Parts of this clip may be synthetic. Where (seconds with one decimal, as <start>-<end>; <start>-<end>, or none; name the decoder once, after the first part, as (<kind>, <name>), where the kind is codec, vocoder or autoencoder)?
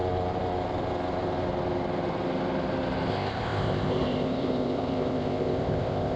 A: 3.1-6.2 (codec, ZipCodec)